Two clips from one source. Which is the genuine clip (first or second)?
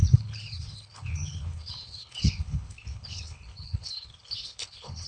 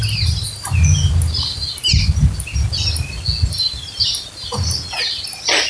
second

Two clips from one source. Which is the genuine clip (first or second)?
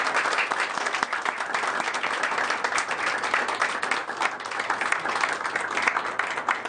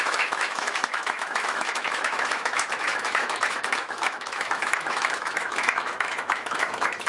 first